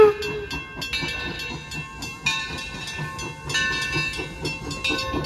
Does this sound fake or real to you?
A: real